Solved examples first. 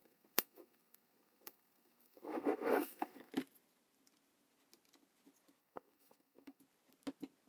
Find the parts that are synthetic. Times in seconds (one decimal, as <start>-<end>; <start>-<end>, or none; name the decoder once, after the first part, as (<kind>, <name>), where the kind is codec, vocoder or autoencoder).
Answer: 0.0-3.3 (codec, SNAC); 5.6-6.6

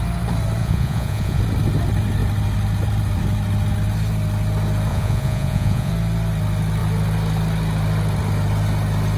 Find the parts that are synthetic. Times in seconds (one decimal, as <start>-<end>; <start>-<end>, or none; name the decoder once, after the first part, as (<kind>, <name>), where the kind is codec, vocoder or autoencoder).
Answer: 0.6-1.4 (vocoder, Vocos); 4.9-5.9

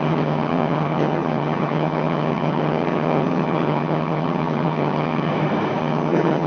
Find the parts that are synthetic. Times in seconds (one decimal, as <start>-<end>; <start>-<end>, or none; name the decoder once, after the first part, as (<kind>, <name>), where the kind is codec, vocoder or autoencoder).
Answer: 0.0-5.3 (vocoder, HiFi-GAN); 5.8-6.5